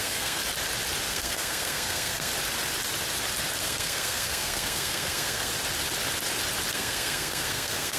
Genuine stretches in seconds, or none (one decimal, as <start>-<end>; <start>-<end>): 0.4-1.1; 2.3-3.6; 5.5-6.7